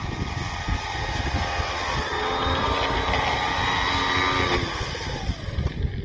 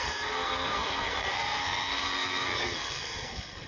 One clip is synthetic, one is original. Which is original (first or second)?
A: first